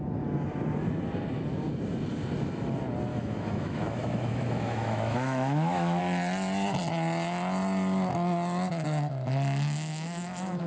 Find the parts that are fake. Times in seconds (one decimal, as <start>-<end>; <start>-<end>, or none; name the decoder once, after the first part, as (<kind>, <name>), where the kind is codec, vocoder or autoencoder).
3.1-6.0 (autoencoder, DAC-VAE); 9.9-10.7